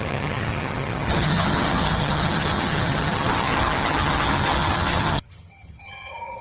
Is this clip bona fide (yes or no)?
no